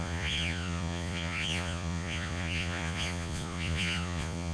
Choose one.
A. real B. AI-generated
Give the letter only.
B